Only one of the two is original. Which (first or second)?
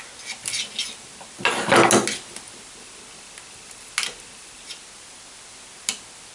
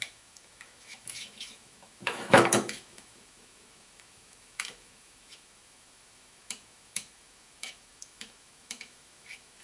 first